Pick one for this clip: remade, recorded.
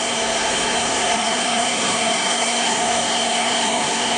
remade